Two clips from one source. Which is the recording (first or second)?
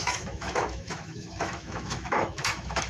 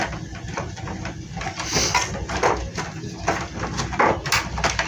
second